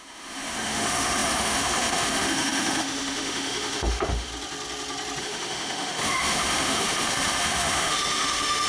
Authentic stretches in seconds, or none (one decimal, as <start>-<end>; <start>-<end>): 4.3-5.2